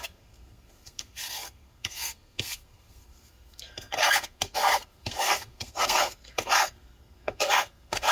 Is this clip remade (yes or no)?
yes